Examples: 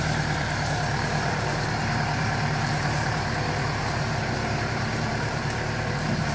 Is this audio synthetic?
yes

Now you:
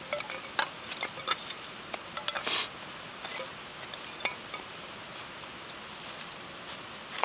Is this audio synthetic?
no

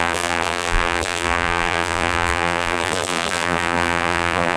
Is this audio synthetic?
yes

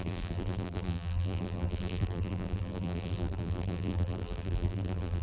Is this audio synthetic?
yes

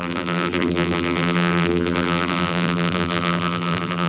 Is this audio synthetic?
yes